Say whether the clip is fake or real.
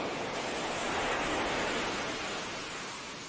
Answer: real